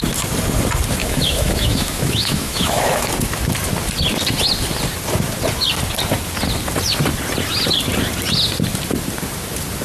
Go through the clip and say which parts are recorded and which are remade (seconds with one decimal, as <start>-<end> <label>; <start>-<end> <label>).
0.0-1.0 recorded; 1.0-3.1 remade; 3.1-9.8 recorded